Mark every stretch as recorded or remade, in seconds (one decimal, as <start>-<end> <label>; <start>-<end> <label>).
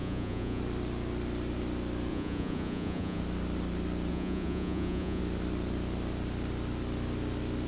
0.0-0.6 remade; 0.6-2.1 recorded; 2.1-3.2 remade; 3.2-4.1 recorded; 4.1-5.2 remade; 5.2-7.7 recorded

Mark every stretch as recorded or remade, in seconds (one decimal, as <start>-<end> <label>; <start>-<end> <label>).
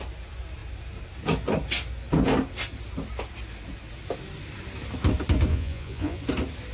0.0-5.5 recorded; 5.5-6.2 remade; 6.2-6.7 recorded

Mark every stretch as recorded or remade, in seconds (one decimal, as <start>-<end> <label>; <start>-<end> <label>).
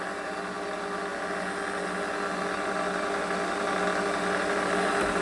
0.0-5.2 recorded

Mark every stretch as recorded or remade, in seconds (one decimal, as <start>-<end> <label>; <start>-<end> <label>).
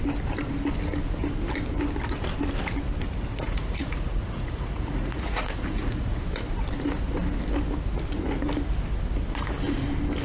0.0-3.3 recorded; 3.3-6.2 remade; 6.2-10.2 recorded